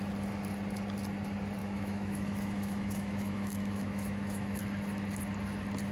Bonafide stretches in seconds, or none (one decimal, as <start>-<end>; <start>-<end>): 0.0-1.6; 4.6-5.9